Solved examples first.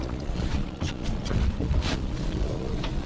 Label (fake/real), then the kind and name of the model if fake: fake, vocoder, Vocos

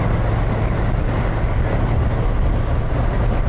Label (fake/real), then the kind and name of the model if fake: real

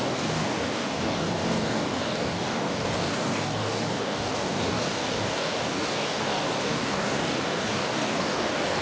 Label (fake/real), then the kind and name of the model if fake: fake, codec, DAC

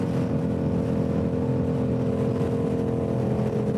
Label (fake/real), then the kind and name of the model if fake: real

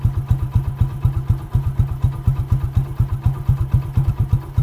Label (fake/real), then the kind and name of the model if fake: real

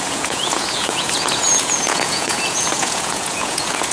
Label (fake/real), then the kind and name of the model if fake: fake, vocoder, Vocos